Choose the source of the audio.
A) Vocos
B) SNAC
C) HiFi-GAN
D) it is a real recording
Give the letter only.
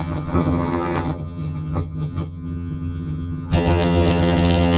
C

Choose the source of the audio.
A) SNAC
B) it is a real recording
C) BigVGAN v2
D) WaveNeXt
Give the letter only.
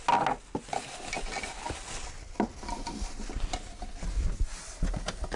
B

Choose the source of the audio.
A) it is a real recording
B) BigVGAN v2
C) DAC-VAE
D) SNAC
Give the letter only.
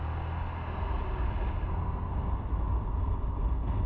A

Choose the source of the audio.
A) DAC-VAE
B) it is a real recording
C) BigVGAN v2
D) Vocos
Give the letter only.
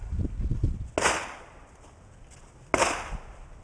B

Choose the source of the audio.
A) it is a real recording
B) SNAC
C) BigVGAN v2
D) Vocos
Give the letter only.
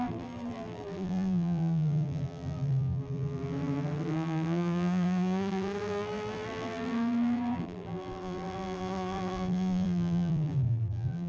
C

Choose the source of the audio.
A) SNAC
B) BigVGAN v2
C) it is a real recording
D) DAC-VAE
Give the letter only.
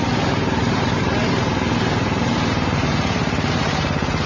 B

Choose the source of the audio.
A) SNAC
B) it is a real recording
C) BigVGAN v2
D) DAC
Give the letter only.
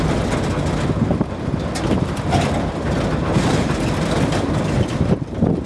B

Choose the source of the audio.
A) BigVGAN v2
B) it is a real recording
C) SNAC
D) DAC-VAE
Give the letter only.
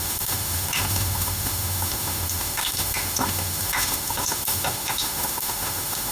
D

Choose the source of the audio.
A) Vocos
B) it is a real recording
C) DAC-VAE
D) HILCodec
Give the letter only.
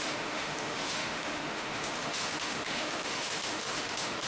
C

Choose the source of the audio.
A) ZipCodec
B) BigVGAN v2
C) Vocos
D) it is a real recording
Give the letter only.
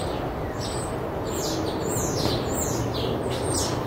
D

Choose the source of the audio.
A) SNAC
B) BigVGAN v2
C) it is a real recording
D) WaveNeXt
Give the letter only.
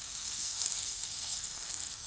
A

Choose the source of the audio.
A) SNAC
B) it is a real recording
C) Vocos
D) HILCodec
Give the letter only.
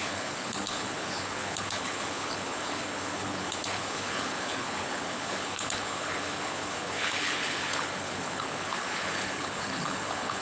D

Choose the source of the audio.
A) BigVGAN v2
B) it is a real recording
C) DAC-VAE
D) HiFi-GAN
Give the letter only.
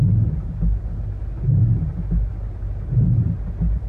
B